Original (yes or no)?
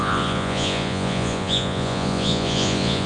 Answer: no